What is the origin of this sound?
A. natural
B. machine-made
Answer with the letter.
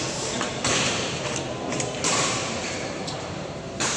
B